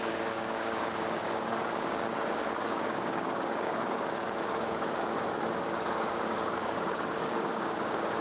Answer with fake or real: fake